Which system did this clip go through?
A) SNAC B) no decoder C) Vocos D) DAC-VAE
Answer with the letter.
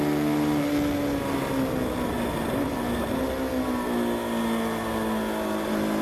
B